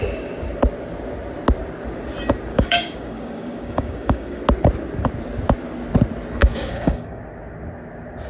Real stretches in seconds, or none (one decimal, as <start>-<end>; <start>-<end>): 0.0-2.5; 4.4-6.4; 7.2-8.3